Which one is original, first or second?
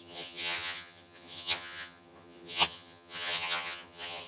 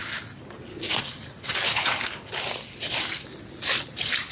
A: second